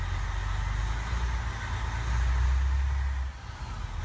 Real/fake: real